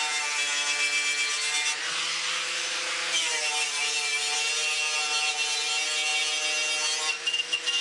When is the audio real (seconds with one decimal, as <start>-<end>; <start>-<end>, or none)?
0.0-7.8